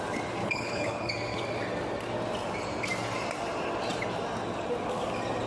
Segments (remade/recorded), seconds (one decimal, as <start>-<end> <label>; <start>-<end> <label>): 0.0-0.4 recorded; 0.4-1.1 remade; 1.1-5.5 recorded